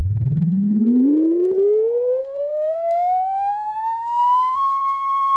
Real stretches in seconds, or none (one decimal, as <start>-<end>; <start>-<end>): 0.8-2.2